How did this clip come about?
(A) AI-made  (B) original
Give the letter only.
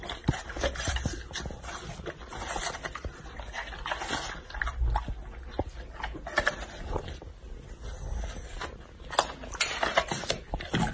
B